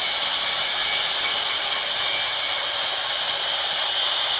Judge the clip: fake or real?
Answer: real